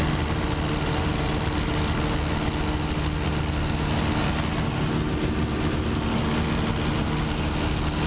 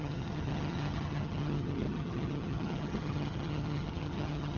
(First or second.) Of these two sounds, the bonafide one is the first